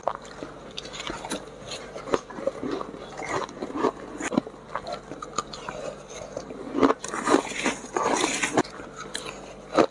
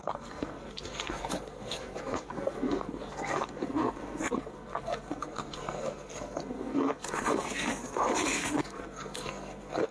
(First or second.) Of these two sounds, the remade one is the second